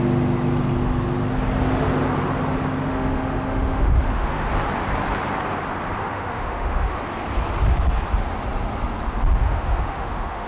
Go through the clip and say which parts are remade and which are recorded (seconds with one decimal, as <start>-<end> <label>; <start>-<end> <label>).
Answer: 0.0-2.9 recorded; 2.9-4.5 remade; 4.5-6.0 recorded; 6.0-7.0 remade; 7.0-9.4 recorded; 9.4-10.5 remade